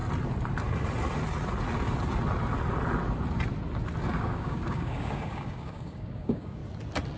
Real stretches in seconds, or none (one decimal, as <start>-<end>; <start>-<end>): 0.0-4.2; 6.6-7.2